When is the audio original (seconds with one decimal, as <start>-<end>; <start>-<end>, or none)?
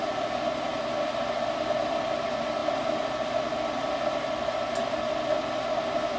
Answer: 0.0-6.2